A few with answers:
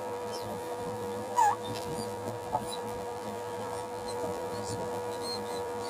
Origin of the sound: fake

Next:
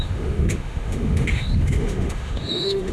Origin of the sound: fake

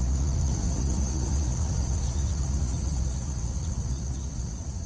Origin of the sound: fake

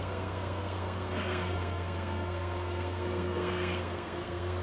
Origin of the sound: fake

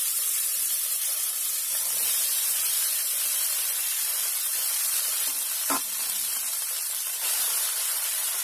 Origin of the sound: fake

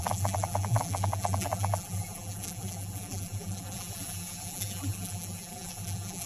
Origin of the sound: fake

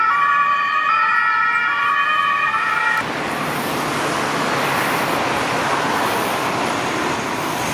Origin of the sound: real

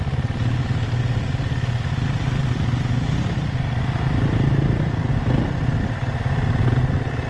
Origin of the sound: real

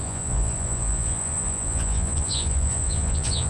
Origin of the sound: fake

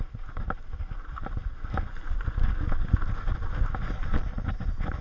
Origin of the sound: real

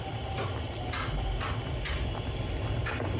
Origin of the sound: real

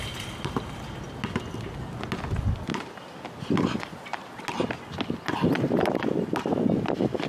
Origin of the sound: real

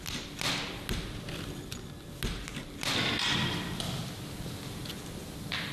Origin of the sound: real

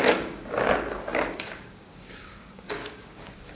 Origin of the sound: fake